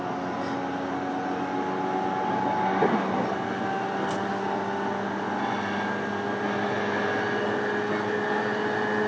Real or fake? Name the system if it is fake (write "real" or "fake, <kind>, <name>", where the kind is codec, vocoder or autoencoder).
real